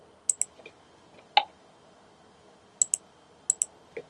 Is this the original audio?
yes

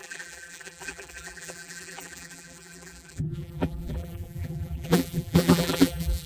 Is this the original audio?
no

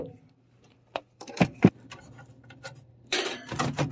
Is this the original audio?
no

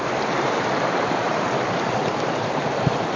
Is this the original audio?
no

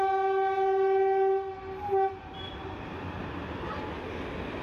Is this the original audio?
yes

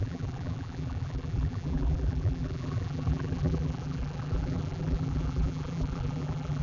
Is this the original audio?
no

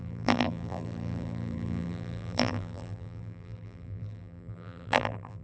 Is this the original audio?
no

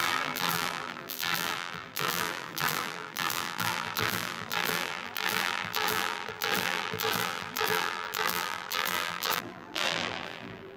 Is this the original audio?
no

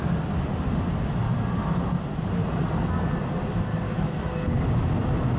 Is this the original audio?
yes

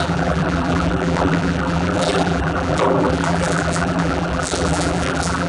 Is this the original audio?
no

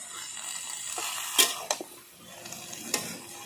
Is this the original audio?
yes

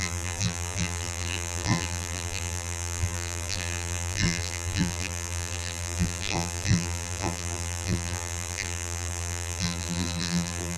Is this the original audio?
no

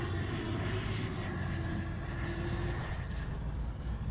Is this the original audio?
yes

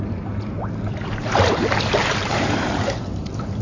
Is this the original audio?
no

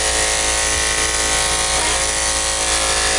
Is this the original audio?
yes